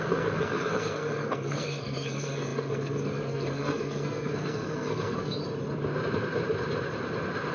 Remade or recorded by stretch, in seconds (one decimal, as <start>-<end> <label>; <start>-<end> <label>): 0.0-5.4 remade; 5.4-7.5 recorded